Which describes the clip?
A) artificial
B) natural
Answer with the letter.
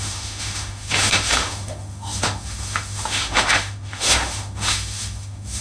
A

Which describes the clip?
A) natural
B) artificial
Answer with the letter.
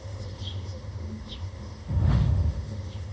B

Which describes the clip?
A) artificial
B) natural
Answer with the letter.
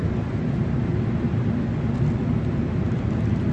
B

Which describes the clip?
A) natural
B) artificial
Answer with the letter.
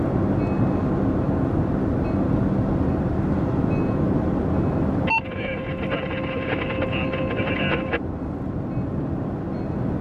A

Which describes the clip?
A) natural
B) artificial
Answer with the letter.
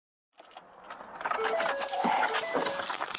A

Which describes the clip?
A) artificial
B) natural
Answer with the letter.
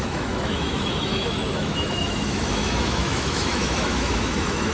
A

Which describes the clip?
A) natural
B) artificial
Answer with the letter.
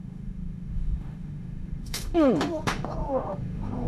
B